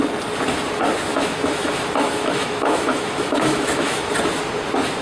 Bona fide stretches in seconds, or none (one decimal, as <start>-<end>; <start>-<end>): 0.0-1.1; 4.1-5.0